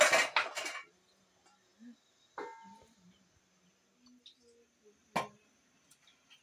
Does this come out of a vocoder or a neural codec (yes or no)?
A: no